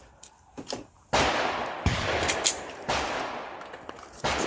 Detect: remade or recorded recorded